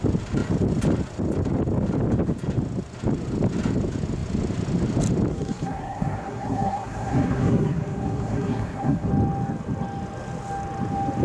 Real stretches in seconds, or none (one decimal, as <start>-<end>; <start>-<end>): 0.0-5.3; 9.1-11.2